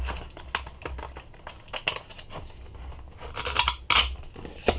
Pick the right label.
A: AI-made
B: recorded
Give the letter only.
B